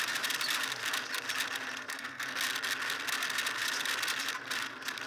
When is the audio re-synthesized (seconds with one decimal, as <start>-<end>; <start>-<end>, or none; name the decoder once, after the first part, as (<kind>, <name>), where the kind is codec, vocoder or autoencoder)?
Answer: 1.9-2.4 (codec, SNAC)